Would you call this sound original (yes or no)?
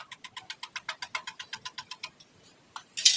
yes